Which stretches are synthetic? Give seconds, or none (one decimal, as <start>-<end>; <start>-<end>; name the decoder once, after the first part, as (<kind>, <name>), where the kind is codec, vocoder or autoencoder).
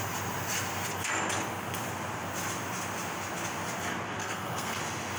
4.2-4.8 (codec, SNAC)